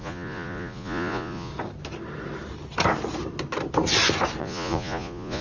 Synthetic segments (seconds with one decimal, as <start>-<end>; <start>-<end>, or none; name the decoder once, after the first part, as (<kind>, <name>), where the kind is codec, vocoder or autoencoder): 0.0-1.5 (vocoder, Vocos); 4.4-5.4